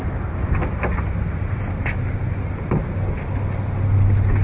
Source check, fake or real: real